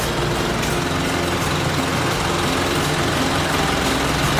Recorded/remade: recorded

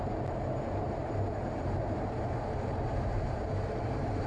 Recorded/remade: remade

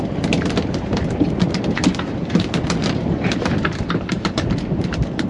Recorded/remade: remade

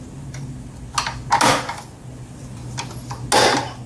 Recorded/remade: recorded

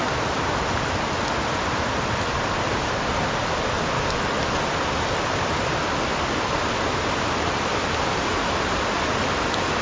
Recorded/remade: recorded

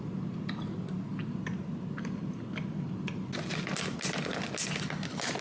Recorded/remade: recorded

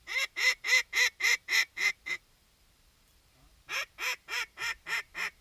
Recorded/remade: remade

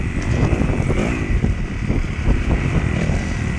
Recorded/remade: remade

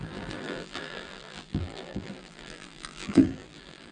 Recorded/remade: remade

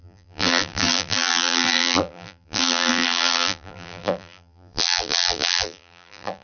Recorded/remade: remade